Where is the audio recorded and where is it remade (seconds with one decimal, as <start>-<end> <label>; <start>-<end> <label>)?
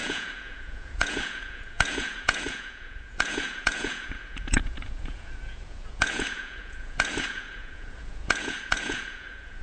0.0-9.6 remade